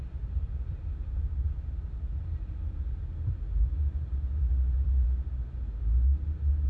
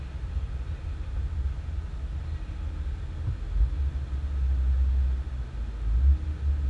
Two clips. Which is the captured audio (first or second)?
second